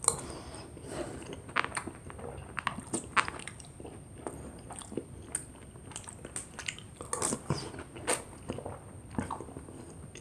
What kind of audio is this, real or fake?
real